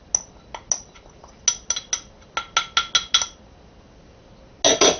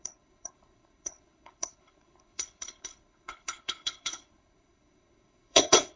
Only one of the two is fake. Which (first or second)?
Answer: second